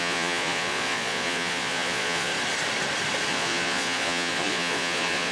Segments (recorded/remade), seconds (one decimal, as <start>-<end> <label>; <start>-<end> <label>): 0.0-2.3 remade; 2.3-3.3 recorded; 3.3-5.3 remade